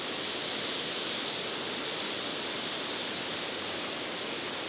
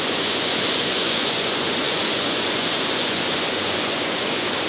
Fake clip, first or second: second